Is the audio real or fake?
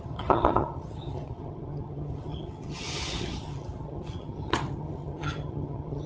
fake